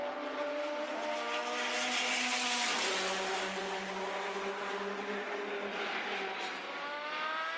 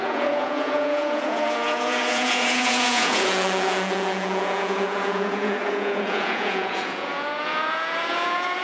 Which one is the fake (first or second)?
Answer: second